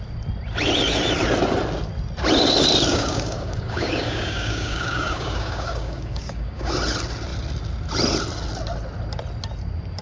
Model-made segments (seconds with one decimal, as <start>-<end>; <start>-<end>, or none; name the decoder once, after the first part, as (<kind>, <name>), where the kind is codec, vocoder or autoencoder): 2.9-6.7 (codec, DAC)